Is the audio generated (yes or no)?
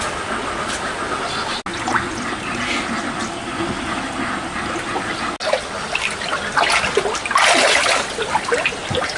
no